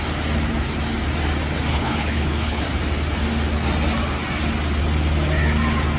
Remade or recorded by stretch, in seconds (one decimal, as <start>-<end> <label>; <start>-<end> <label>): 0.0-1.7 recorded; 1.7-2.6 remade; 2.6-6.0 recorded